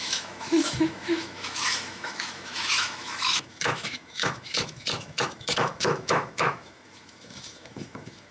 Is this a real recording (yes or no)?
no